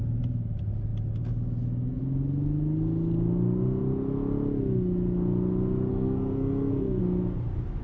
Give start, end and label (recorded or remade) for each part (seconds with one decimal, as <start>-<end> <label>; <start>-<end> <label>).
0.0-5.9 recorded; 5.9-7.0 remade; 7.0-7.8 recorded